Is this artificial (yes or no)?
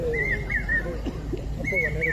yes